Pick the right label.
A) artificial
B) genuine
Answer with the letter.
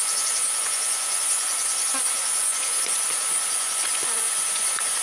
A